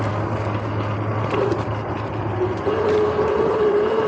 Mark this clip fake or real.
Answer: real